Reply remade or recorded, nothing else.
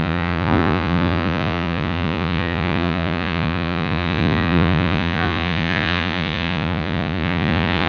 remade